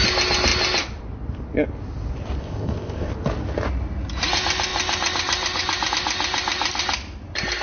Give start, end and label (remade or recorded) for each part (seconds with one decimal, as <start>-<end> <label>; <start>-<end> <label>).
0.0-2.4 recorded; 2.4-3.1 remade; 3.1-7.6 recorded